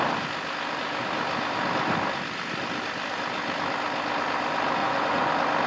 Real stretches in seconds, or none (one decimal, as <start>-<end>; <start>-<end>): 0.0-4.8; 5.3-5.7